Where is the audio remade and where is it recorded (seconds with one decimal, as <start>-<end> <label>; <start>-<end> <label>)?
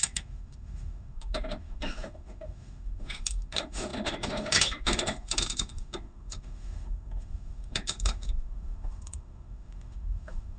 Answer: 0.0-10.6 remade